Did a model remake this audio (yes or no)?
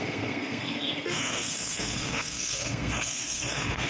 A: yes